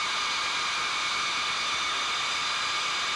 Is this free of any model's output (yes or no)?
yes